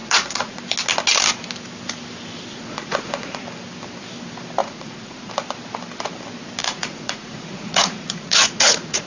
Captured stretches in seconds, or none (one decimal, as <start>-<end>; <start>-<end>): 0.6-2.5; 3.4-4.6; 5.3-6.6